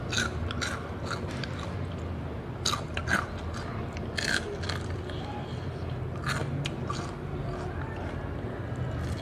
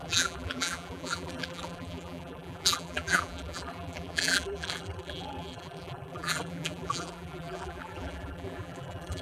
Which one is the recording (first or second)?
first